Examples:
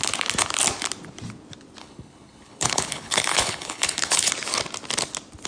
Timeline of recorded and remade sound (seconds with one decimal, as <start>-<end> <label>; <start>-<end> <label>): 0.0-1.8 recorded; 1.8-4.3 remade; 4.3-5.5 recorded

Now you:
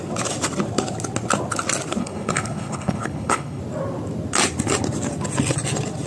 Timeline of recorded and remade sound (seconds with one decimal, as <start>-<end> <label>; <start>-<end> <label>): 0.0-2.0 recorded; 2.0-3.6 remade; 3.6-6.1 recorded

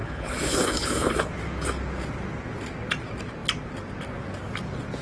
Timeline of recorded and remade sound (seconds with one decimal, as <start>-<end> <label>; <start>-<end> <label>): 0.0-1.3 remade; 1.3-5.0 recorded

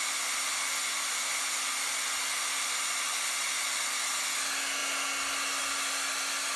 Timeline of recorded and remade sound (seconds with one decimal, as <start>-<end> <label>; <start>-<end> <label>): 0.0-6.6 recorded

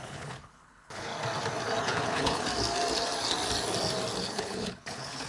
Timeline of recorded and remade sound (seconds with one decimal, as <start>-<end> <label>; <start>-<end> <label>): 0.0-1.1 remade; 1.1-1.8 recorded; 1.8-2.5 remade; 2.5-4.2 recorded; 4.2-5.3 remade

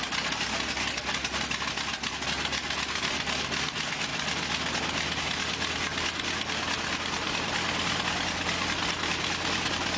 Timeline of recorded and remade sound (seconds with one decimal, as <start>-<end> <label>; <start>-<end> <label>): 0.0-10.0 recorded

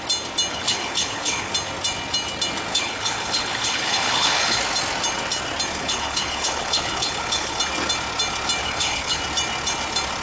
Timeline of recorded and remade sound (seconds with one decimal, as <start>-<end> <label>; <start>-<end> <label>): 0.0-0.5 recorded; 0.5-1.5 remade; 1.5-2.7 recorded; 2.7-4.6 remade; 4.6-5.8 recorded; 5.8-7.6 remade; 7.6-8.6 recorded; 8.6-9.2 remade; 9.2-10.2 recorded

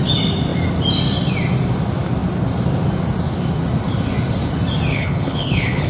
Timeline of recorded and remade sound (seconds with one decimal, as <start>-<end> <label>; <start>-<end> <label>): 0.0-4.9 recorded; 4.9-5.9 remade